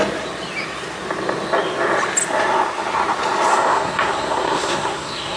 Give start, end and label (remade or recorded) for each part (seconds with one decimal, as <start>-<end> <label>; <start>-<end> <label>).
0.0-3.5 recorded; 3.5-5.4 remade